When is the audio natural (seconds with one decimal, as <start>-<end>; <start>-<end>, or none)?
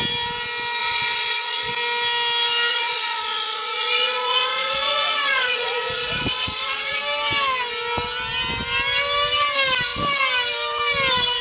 0.0-0.8; 1.7-2.7; 7.0-11.4